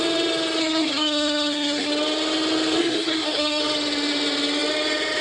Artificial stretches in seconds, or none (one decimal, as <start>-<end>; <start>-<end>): 0.6-1.9; 2.8-3.6